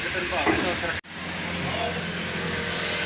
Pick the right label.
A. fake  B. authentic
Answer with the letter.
B